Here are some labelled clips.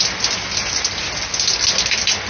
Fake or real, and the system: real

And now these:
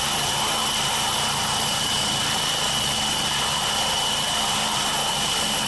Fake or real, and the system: fake, vocoder, BigVGAN v2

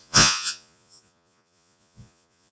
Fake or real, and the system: fake, vocoder, Vocos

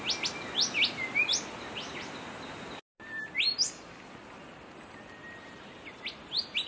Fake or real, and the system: real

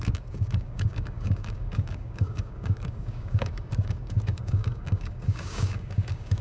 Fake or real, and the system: fake, codec, DAC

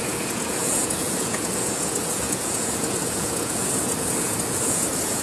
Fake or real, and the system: fake, vocoder, Vocos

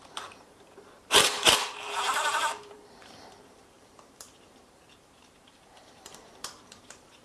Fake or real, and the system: fake, vocoder, BigVGAN v2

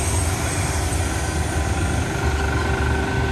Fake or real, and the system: real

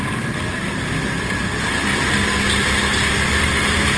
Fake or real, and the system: real